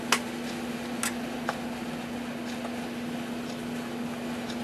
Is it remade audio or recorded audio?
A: recorded